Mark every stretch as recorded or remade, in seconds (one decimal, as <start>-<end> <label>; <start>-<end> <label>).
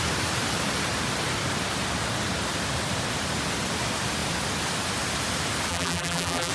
0.0-5.7 recorded; 5.7-6.5 remade